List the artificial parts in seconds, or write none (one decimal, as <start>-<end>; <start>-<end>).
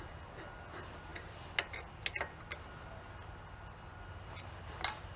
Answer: none